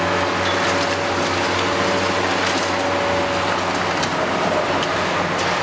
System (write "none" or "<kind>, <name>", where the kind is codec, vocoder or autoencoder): none